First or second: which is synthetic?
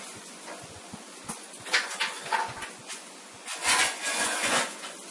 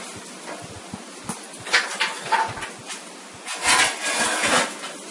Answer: first